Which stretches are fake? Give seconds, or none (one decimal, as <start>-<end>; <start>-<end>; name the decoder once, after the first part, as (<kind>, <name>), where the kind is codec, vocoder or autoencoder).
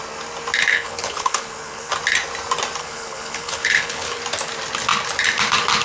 0.7-1.9 (codec, HILCodec); 2.8-4.2